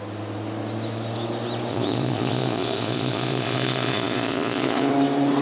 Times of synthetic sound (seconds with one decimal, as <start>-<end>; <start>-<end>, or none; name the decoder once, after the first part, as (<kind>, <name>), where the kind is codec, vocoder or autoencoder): 1.7-4.9 (vocoder, Vocos)